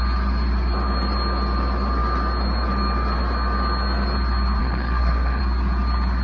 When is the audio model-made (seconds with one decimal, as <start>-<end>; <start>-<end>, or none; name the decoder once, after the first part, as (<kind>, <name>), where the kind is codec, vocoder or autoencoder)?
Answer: 4.6-5.4 (codec, SNAC)